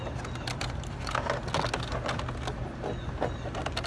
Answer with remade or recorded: recorded